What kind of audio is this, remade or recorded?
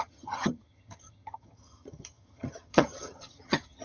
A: remade